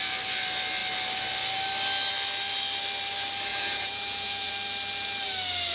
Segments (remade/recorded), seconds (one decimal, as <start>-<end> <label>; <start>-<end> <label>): 0.0-3.5 recorded; 3.5-4.5 remade; 4.5-5.7 recorded